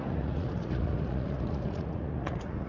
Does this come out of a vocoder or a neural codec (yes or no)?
yes